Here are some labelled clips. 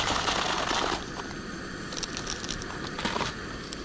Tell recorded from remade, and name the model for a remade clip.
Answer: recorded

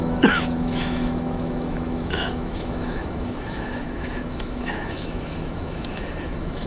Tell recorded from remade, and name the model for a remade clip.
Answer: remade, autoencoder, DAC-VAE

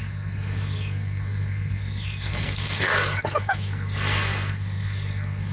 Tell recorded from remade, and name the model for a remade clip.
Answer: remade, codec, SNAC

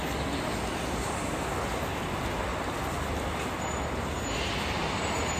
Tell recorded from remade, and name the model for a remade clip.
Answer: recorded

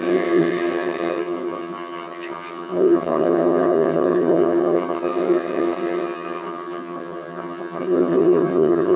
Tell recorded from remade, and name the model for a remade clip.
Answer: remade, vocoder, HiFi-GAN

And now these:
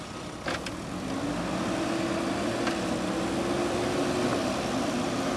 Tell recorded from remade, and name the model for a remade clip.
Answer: recorded